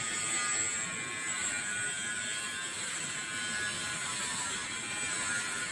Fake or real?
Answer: real